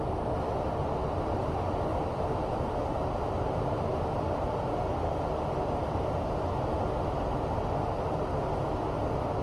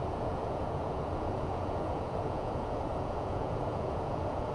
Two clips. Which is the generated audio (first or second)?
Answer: second